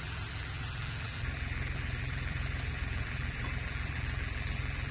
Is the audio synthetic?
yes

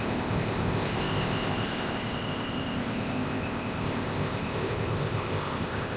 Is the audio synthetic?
yes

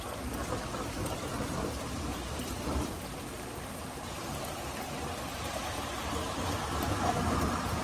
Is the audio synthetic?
no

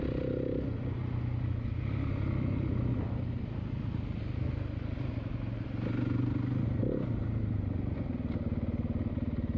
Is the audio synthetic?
no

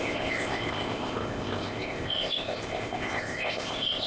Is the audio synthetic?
yes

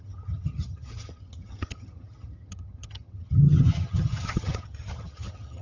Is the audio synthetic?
yes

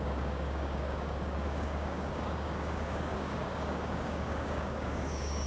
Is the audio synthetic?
yes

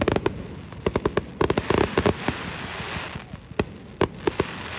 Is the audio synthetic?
no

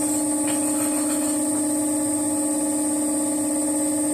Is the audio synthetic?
no